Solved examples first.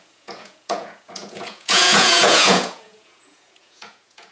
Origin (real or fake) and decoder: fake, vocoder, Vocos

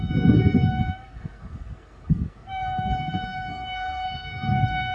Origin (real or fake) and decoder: fake, codec, SNAC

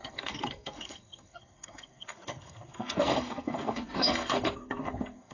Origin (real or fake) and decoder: fake, codec, SNAC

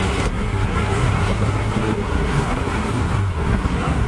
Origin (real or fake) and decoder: fake, codec, SNAC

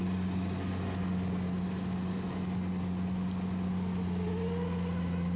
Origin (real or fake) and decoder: real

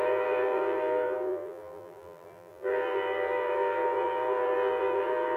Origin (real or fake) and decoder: fake, vocoder, BigVGAN v2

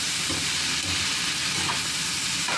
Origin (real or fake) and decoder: real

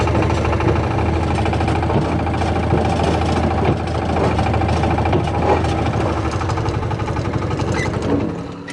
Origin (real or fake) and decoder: real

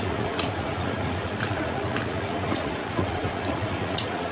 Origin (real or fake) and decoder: fake, vocoder, Vocos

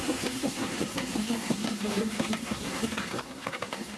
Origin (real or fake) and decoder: fake, codec, SNAC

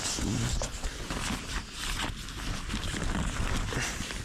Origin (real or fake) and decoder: real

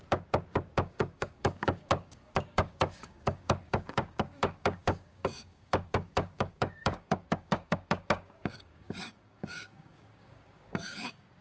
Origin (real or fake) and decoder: fake, codec, DAC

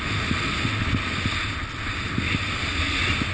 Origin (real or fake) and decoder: real